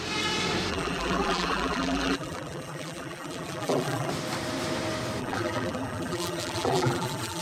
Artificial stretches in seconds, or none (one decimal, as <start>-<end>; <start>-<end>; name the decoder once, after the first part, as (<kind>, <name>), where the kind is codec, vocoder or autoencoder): 0.7-4.1 (vocoder, BigVGAN v2); 5.2-7.4